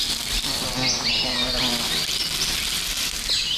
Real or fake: real